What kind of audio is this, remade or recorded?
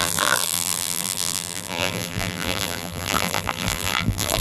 remade